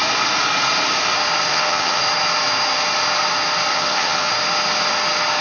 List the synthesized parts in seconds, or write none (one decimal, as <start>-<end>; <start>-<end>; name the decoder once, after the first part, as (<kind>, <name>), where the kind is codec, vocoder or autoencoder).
1.5-2.0 (vocoder, HiFi-GAN); 3.7-4.3